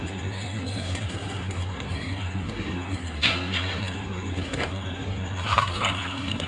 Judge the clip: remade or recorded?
remade